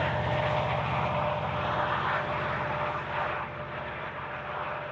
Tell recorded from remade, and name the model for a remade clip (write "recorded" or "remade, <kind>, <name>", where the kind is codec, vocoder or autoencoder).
recorded